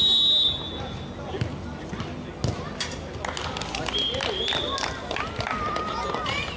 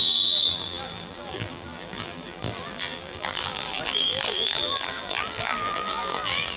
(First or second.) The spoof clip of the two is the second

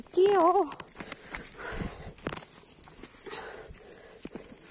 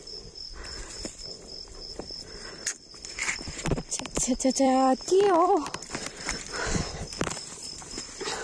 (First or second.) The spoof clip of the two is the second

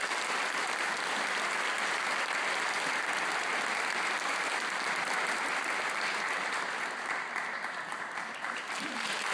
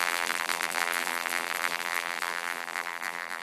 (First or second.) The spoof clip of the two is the second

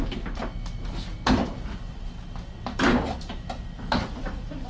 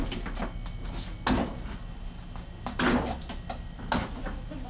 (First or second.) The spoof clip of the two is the first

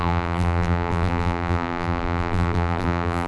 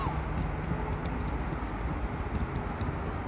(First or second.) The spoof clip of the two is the first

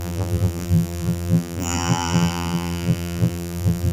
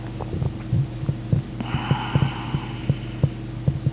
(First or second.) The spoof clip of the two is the first